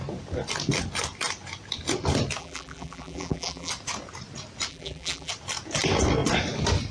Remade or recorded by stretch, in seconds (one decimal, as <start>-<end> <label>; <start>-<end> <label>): 0.0-2.4 recorded; 2.4-3.7 remade; 3.7-4.7 recorded; 4.7-5.3 remade; 5.3-6.9 recorded